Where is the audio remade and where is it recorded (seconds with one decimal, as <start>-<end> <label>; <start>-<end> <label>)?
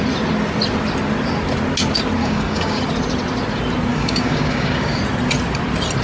0.0-2.2 recorded; 2.2-2.8 remade; 2.8-3.9 recorded; 3.9-5.0 remade; 5.0-6.0 recorded